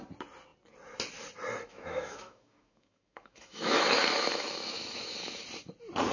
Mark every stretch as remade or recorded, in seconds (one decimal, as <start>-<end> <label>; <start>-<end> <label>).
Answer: 0.0-1.7 recorded; 1.7-5.4 remade; 5.4-6.1 recorded